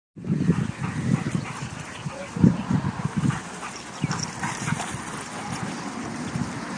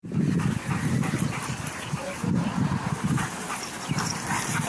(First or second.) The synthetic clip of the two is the second